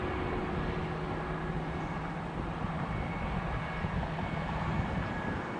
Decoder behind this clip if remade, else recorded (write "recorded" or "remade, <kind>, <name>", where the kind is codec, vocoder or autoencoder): recorded